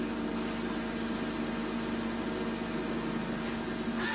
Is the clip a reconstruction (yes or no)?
no